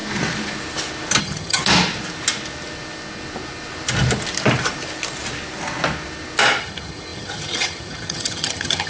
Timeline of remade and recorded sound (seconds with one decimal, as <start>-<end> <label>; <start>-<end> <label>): 0.0-1.2 recorded; 1.2-1.6 remade; 1.6-6.6 recorded; 6.6-8.9 remade